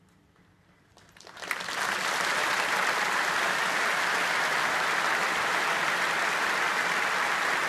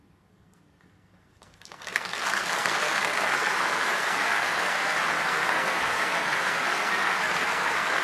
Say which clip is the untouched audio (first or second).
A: first